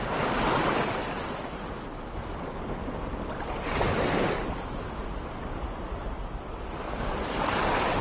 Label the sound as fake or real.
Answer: real